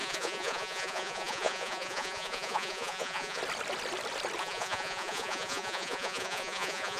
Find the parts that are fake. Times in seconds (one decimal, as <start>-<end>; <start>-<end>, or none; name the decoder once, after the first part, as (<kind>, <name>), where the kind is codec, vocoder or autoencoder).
0.0-3.4 (vocoder, Vocos); 4.4-7.0